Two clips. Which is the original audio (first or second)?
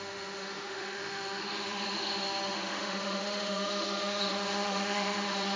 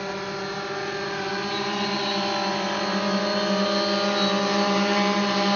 second